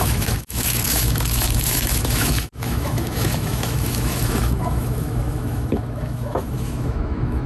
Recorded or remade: remade